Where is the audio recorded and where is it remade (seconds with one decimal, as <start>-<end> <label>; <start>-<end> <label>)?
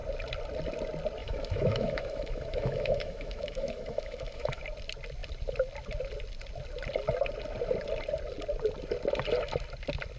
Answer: 0.0-1.2 recorded; 1.2-4.6 remade; 4.6-10.2 recorded